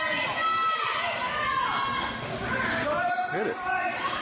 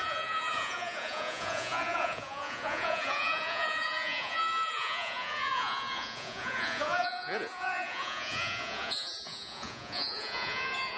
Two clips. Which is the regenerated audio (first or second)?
second